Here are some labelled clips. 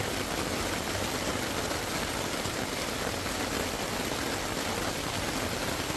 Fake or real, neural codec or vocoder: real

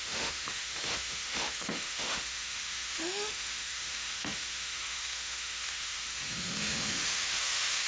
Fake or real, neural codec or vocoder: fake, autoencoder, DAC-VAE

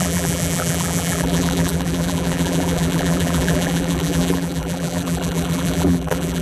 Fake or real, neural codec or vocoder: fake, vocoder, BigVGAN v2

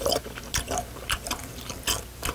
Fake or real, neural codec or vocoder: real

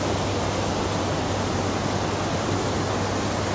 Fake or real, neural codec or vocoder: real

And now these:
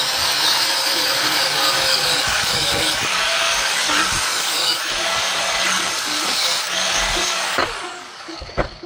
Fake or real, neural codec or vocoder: fake, codec, DAC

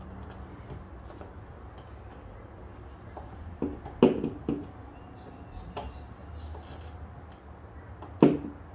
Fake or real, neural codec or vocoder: real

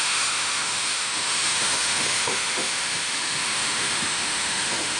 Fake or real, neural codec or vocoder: fake, autoencoder, DAC-VAE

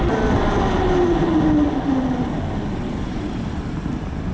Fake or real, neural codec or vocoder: real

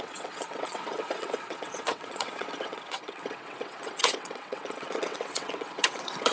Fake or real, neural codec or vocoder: fake, vocoder, WaveNeXt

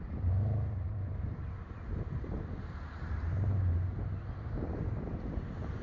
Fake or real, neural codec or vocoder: fake, vocoder, BigVGAN v2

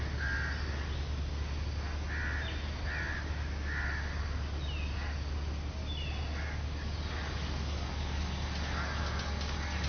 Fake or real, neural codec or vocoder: real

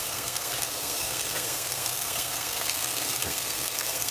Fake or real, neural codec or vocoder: fake, codec, SNAC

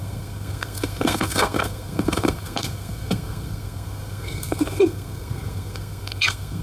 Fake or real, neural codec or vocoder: fake, codec, SNAC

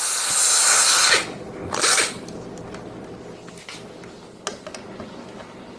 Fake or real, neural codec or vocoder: real